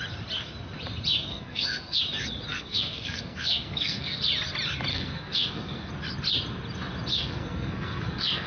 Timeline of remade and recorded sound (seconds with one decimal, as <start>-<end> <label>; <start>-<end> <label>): 0.0-1.3 recorded; 1.3-2.0 remade; 2.0-2.5 recorded; 2.5-4.2 remade; 4.2-4.9 recorded; 4.9-5.9 remade; 5.9-7.1 recorded; 7.1-8.5 remade

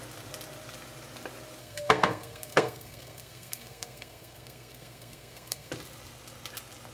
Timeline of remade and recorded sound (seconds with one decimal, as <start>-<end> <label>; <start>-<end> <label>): 0.0-1.6 recorded; 1.6-5.7 remade; 5.7-6.9 recorded